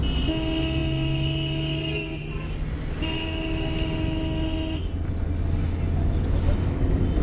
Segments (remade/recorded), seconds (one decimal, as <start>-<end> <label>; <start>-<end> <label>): 0.0-7.2 recorded